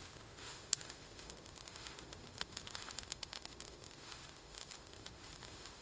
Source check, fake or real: fake